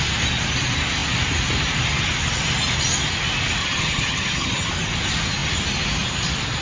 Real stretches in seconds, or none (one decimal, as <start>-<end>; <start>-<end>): 0.0-3.6; 4.7-6.6